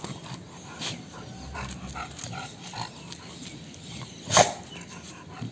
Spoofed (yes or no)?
no